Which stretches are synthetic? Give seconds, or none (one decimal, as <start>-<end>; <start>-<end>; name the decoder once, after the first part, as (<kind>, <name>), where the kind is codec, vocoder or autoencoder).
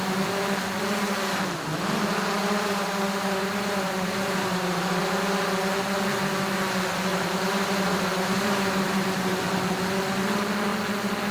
2.4-5.0 (vocoder, BigVGAN v2); 7.1-9.7